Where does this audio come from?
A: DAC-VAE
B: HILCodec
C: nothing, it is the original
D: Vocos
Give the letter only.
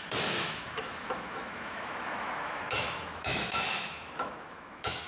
A